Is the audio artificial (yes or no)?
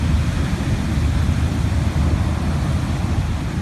no